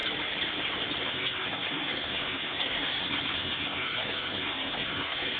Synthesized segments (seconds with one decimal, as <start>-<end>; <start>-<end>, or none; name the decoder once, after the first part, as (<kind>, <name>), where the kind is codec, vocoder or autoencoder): 1.0-5.4 (codec, SNAC)